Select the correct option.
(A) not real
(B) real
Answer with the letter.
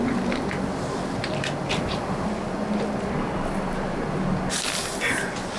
B